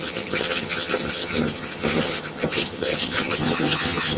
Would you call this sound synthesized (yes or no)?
yes